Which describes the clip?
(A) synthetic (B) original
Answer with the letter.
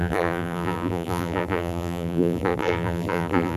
A